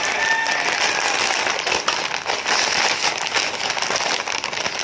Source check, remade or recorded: recorded